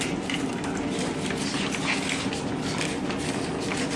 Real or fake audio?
real